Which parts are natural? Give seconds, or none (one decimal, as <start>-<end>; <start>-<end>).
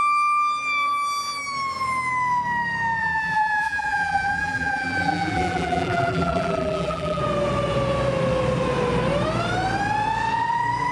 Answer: 0.0-3.0; 7.2-10.9